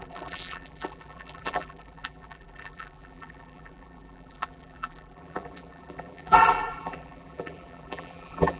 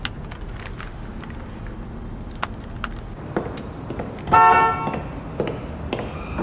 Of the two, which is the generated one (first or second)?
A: first